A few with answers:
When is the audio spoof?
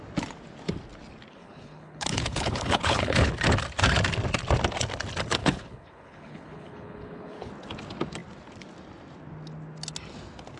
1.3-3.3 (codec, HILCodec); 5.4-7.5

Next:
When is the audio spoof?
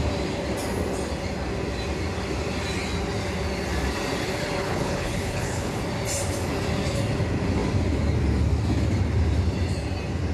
4.6-5.8 (codec, HILCodec)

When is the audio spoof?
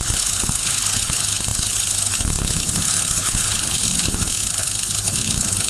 0.0-5.7 (codec, HILCodec)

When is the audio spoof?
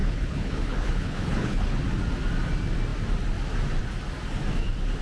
0.0-1.8 (codec, HILCodec)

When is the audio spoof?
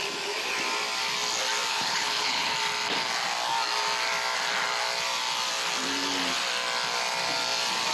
1.7-2.5 (codec, HILCodec)